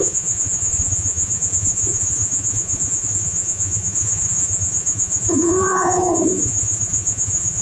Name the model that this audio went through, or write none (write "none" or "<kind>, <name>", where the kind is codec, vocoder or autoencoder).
vocoder, Vocos